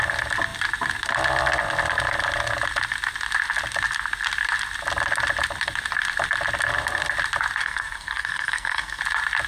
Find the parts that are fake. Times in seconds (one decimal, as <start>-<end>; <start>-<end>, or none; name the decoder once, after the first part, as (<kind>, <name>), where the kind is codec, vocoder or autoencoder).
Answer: 7.6-9.0 (codec, SNAC)